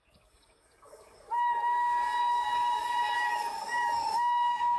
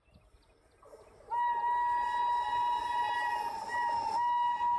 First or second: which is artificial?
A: first